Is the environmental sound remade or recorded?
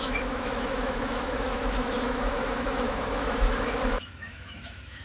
remade